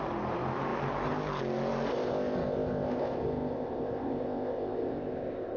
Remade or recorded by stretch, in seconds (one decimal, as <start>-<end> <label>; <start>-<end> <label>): 0.0-1.9 recorded; 1.9-5.6 remade